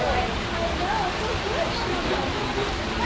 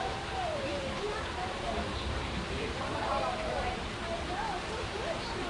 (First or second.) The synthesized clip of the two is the second